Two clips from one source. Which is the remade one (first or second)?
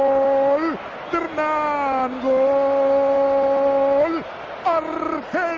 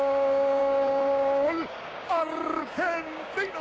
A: second